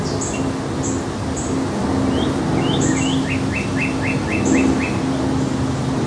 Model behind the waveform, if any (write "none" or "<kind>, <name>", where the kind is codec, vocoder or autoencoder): none